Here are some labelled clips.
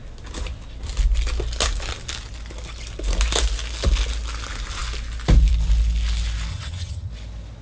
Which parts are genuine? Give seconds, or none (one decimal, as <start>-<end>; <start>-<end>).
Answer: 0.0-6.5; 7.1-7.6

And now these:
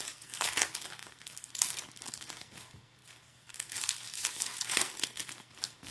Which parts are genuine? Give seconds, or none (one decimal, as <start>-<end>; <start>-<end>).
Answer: none

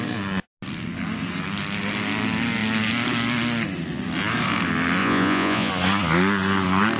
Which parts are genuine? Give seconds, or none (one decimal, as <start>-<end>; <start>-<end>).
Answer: 0.0-5.0; 5.7-7.0

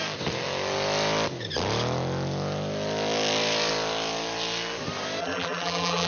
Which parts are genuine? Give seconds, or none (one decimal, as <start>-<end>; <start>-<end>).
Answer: 0.0-5.2

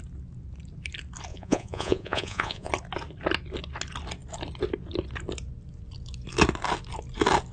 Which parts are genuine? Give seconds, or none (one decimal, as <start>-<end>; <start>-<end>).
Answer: 0.0-1.3; 2.7-7.5

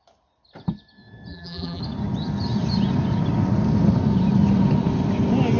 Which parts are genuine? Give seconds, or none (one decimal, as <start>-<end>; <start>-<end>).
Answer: 0.0-1.3; 1.8-5.6

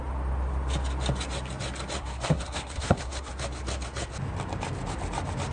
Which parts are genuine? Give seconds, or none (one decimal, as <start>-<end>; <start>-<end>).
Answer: 0.0-2.0; 3.3-5.5

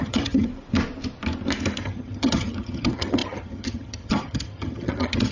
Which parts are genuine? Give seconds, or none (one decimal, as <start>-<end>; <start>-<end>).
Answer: 0.5-1.8